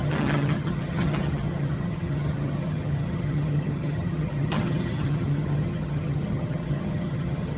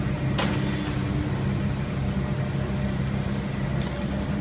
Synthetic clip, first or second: first